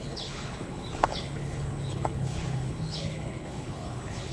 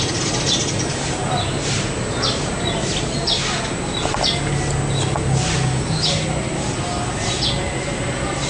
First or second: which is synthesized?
first